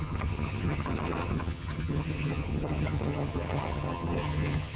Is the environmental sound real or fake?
fake